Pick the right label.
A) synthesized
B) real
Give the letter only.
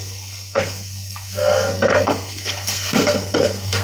A